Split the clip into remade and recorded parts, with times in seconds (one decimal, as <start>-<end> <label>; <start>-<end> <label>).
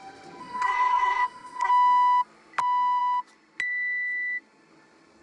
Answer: 0.0-0.4 recorded; 0.4-1.7 remade; 1.7-5.2 recorded